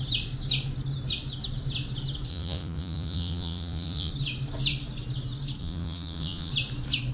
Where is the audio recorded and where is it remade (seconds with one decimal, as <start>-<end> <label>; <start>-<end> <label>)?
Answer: 0.0-2.3 recorded; 2.3-4.1 remade; 4.1-5.6 recorded; 5.6-6.5 remade; 6.5-7.1 recorded